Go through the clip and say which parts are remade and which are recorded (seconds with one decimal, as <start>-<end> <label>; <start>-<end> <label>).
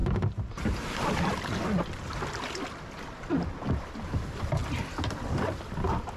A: 0.0-3.7 recorded; 3.7-6.2 remade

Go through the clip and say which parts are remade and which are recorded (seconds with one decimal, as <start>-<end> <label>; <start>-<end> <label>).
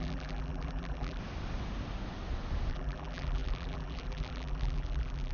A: 0.0-1.2 remade; 1.2-2.7 recorded; 2.7-5.3 remade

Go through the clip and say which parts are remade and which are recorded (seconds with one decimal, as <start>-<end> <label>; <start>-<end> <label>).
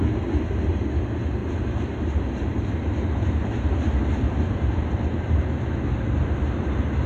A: 0.0-1.4 recorded; 1.4-5.7 remade; 5.7-7.1 recorded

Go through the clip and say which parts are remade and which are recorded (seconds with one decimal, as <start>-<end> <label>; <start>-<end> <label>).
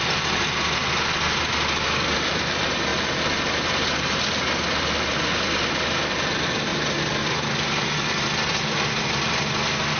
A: 0.0-2.9 remade; 2.9-3.9 recorded; 3.9-6.7 remade; 6.7-7.8 recorded; 7.8-10.0 remade